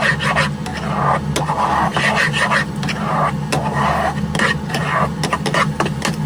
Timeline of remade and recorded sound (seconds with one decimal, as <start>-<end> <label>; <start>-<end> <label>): 0.0-6.3 recorded

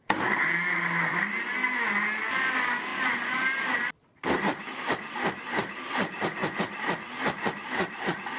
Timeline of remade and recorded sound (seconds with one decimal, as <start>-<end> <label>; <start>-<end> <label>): 0.0-8.4 recorded

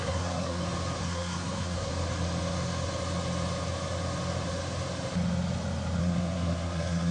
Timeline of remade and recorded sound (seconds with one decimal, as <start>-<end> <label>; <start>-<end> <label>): 0.0-0.6 remade; 0.6-1.0 recorded; 1.0-1.9 remade; 1.9-6.0 recorded; 6.0-7.1 remade

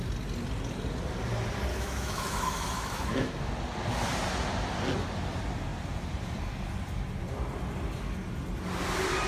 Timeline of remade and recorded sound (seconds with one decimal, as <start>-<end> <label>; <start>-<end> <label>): 0.0-1.7 recorded; 1.7-3.5 remade; 3.5-9.3 recorded

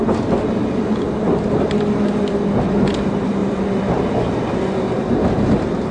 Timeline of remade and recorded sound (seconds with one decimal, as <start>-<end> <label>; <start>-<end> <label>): 0.0-5.9 recorded

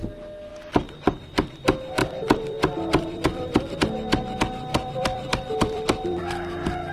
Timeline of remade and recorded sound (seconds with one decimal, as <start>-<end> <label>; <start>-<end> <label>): 0.0-2.0 recorded; 2.0-3.7 remade; 3.7-4.7 recorded; 4.7-6.2 remade; 6.2-6.9 recorded

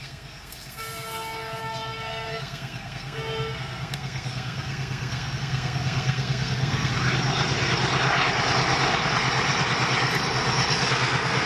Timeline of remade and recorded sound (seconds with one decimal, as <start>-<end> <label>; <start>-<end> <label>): 0.0-6.9 remade; 6.9-10.9 recorded; 10.9-11.5 remade

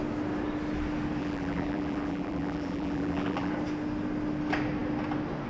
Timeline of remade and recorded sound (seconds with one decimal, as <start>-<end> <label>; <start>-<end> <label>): 0.0-1.2 recorded; 1.2-3.5 remade; 3.5-5.5 recorded